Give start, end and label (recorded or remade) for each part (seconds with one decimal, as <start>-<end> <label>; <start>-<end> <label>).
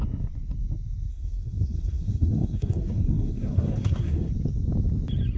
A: 0.0-1.1 recorded; 1.1-4.3 remade; 4.3-5.4 recorded